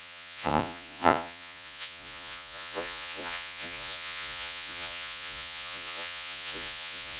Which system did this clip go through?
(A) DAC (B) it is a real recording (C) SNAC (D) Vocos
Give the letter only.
D